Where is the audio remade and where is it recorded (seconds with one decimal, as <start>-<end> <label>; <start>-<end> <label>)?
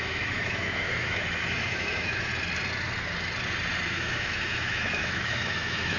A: 0.0-2.3 remade; 2.3-3.9 recorded; 3.9-6.0 remade